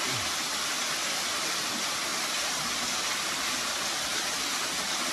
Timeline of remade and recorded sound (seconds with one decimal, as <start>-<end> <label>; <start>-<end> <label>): 0.0-5.1 recorded